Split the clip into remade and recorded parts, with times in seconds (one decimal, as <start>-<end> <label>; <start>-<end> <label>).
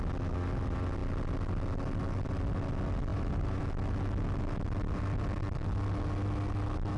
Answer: 0.0-3.1 recorded; 3.1-3.6 remade; 3.6-7.0 recorded